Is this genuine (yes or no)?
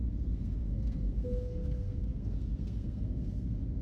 no